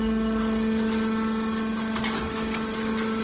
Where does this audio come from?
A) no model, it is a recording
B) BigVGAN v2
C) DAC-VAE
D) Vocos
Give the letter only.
A